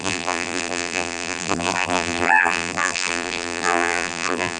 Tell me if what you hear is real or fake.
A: fake